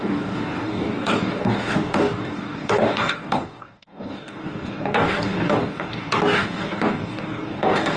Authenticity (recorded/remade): remade